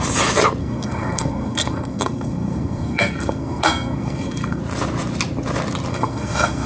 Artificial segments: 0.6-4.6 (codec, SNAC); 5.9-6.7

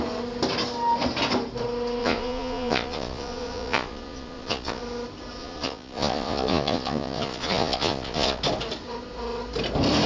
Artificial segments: 2.0-4.8 (vocoder, Vocos); 5.4-8.4

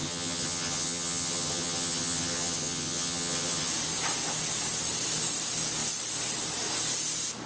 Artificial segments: 0.0-3.7 (vocoder, HiFi-GAN)

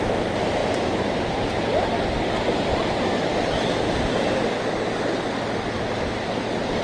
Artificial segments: 0.6-4.6 (vocoder, BigVGAN v2)